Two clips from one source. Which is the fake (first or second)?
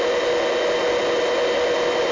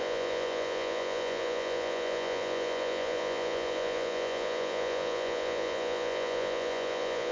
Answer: second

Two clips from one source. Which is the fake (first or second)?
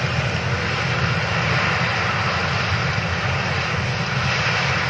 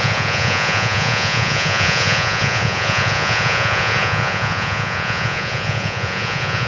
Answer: second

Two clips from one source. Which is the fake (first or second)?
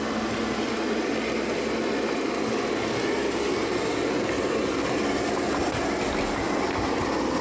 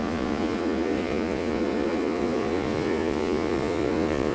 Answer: second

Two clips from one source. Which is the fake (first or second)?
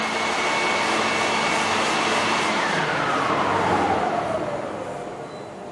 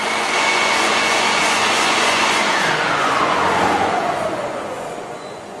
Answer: second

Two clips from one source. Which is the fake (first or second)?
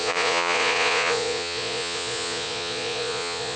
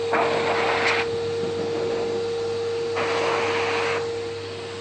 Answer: first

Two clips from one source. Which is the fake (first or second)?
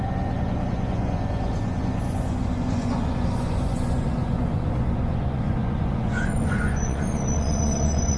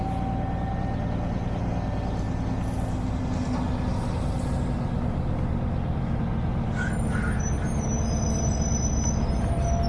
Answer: first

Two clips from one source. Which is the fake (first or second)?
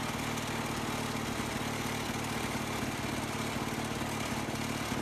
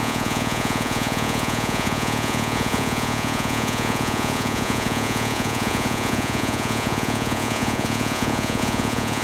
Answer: second